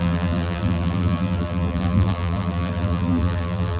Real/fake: fake